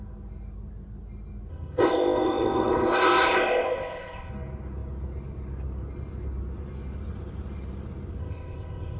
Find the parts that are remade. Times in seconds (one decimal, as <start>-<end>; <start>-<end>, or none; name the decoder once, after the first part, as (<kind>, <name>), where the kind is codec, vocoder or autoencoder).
1.5-4.3 (codec, ZipCodec); 8.2-9.0